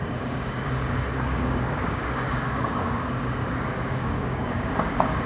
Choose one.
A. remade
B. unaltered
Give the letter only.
A